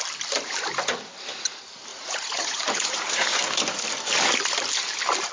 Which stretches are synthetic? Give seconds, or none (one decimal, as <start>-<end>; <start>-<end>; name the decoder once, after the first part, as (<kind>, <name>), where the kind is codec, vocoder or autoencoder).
1.9-2.9 (vocoder, Vocos)

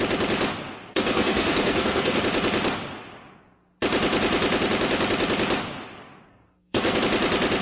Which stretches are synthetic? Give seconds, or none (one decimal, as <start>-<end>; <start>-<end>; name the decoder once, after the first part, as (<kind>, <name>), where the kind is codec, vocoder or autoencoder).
0.9-2.2 (codec, SNAC); 6.3-7.0

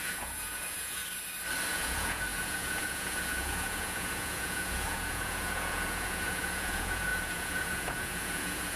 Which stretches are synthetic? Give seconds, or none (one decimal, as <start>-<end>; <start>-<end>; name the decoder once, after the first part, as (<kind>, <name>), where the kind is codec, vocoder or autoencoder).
0.0-1.0 (vocoder, Vocos); 1.7-8.8

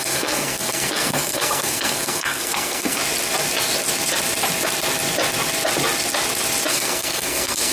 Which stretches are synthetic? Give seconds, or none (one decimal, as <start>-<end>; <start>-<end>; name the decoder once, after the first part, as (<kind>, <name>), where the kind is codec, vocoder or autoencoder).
0.0-3.0 (codec, SNAC); 6.7-7.7

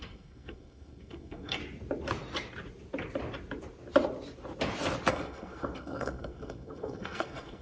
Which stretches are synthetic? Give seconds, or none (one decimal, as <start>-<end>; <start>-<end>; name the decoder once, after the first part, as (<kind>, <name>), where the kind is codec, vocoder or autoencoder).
0.0-1.6 (codec, SNAC); 5.1-7.6